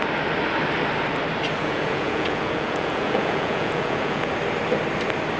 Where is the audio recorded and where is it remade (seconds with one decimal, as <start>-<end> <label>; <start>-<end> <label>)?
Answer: 0.0-1.6 recorded; 1.6-4.3 remade; 4.3-5.4 recorded